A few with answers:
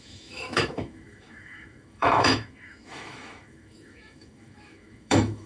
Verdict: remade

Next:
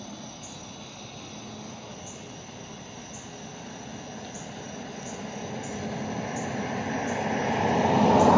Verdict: recorded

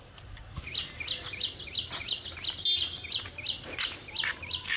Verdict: recorded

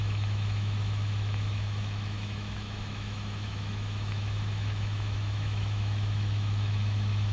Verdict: remade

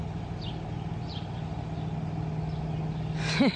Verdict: recorded